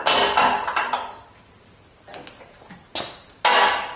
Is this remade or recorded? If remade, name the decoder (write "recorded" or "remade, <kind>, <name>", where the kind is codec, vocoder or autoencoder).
recorded